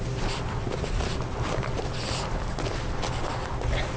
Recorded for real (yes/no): yes